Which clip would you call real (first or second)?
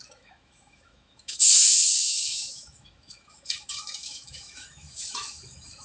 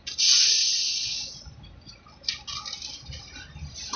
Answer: second